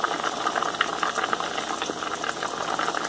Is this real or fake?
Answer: real